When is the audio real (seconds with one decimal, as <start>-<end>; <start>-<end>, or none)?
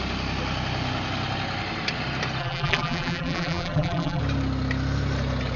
0.0-2.4; 4.2-5.6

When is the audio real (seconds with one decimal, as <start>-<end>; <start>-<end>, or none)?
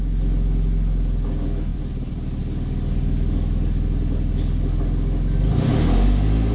0.0-1.7; 2.4-6.5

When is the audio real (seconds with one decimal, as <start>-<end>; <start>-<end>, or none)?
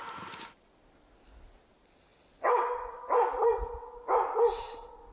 0.0-2.1; 3.9-5.1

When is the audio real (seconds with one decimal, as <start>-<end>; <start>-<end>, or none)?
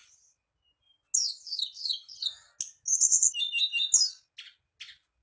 0.0-5.2